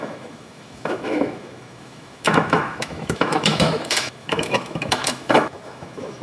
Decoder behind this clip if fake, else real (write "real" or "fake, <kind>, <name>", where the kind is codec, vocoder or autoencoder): fake, autoencoder, DAC-VAE